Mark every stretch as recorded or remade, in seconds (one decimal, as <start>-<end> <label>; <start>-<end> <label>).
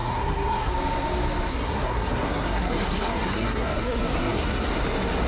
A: 0.0-0.7 remade; 0.7-1.5 recorded; 1.5-4.7 remade; 4.7-5.3 recorded